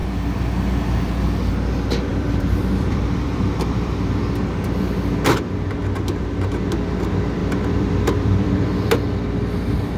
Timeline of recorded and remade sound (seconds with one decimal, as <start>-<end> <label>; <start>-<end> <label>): 0.0-2.1 recorded; 2.1-4.2 remade; 4.2-7.4 recorded; 7.4-10.0 remade

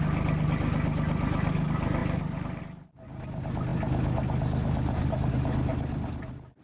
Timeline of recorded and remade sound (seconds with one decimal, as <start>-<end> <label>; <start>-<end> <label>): 0.0-6.6 recorded